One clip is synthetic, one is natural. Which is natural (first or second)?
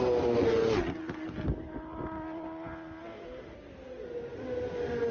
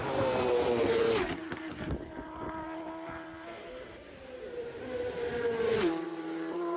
first